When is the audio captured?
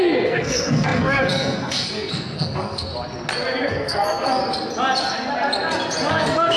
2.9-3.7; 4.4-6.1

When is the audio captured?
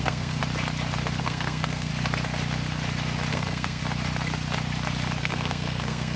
0.4-1.2; 1.9-3.3; 3.8-5.2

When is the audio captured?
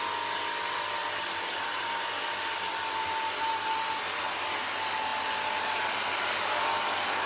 0.0-7.3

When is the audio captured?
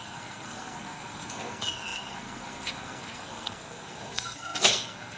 none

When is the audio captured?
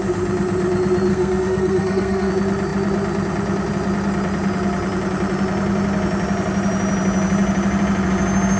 0.0-1.1; 2.3-8.6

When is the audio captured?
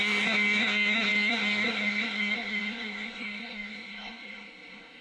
none